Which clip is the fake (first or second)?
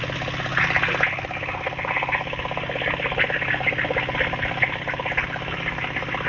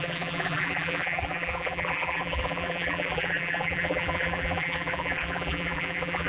second